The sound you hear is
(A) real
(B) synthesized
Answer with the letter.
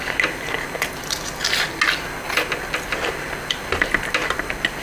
A